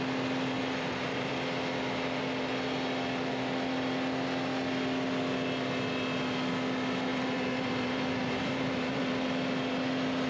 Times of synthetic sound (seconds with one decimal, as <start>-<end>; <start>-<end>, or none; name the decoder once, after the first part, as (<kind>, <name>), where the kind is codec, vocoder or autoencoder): 0.6-1.3 (vocoder, BigVGAN v2); 7.1-9.1